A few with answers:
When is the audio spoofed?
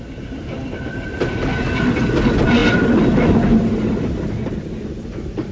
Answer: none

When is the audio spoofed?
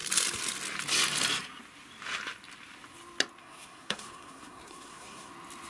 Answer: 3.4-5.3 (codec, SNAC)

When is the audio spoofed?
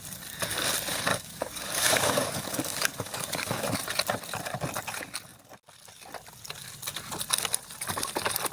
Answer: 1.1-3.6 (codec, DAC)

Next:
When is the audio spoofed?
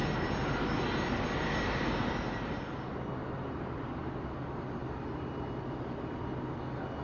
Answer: none